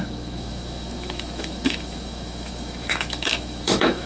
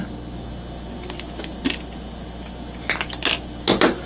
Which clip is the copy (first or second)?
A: first